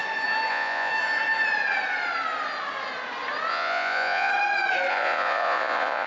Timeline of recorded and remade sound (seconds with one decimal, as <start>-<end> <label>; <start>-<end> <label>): 0.0-0.5 recorded; 0.5-0.9 remade; 0.9-3.5 recorded; 3.5-4.3 remade; 4.3-4.9 recorded; 4.9-6.1 remade

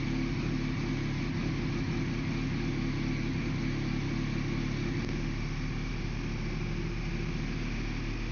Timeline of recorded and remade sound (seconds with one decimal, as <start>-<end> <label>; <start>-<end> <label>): 0.0-8.3 recorded

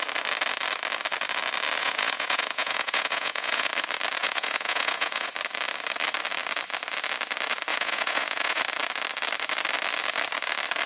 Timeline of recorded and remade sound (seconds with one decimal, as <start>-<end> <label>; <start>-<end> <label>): 0.0-1.8 recorded; 1.8-3.7 remade; 3.7-4.2 recorded; 4.2-5.3 remade; 5.3-7.7 recorded; 7.7-8.6 remade; 8.6-10.9 recorded

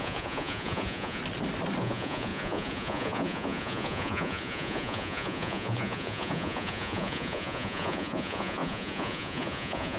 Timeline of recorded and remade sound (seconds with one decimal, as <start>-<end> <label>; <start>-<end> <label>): 0.0-1.2 remade; 1.2-1.8 recorded; 1.8-10.0 remade

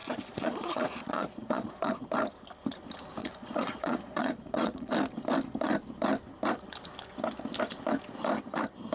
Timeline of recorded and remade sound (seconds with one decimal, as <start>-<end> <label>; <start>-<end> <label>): 0.0-2.0 remade; 2.0-3.2 recorded; 3.2-4.9 remade; 4.9-8.9 recorded

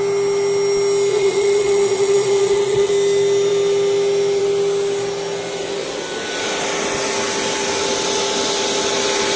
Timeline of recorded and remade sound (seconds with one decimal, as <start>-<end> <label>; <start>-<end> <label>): 0.0-1.1 recorded; 1.1-2.9 remade; 2.9-9.4 recorded